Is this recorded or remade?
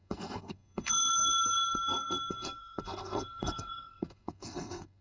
remade